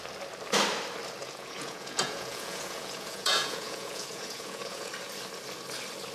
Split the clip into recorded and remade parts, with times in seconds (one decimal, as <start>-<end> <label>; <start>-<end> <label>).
0.0-1.2 recorded; 1.2-4.9 remade; 4.9-6.1 recorded